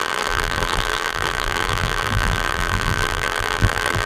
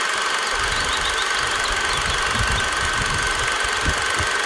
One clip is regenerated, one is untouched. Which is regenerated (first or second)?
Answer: first